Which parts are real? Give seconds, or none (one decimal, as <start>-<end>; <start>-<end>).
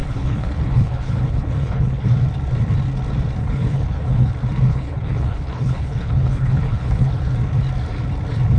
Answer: 2.1-3.4; 4.3-4.7; 7.2-8.6